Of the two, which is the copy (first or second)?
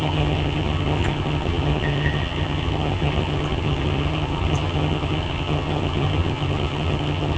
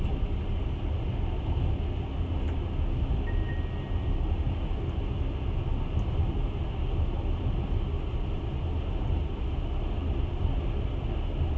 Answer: first